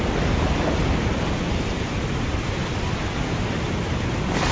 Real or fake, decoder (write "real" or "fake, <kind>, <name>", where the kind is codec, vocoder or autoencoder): real